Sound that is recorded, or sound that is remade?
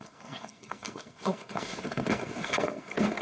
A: remade